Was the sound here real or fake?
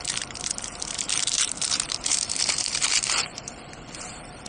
fake